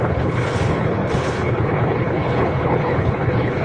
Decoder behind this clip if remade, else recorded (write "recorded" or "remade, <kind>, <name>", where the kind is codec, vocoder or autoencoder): remade, codec, HILCodec